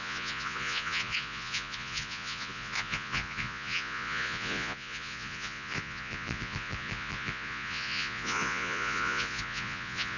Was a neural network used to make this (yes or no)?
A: yes